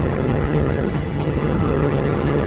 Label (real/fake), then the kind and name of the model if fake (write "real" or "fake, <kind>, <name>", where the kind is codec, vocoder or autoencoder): fake, vocoder, HiFi-GAN